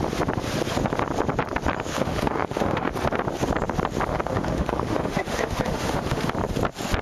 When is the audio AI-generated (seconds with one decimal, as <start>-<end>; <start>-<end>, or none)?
1.9-2.9; 4.1-6.3